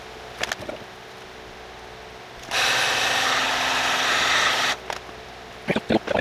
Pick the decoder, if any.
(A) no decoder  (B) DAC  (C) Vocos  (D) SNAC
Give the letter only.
A